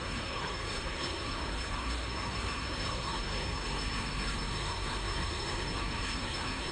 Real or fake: fake